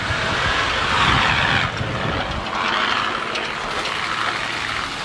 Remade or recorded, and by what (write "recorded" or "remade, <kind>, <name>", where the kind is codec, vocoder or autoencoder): recorded